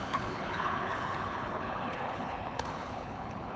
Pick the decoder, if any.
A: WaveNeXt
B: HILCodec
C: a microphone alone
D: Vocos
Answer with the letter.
B